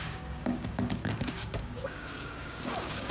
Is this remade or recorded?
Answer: remade